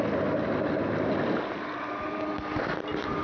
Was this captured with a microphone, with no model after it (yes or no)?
yes